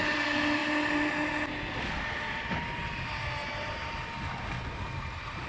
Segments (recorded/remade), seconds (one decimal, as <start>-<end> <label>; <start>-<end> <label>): 0.0-5.5 recorded